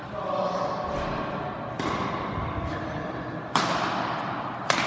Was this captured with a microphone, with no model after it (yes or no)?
yes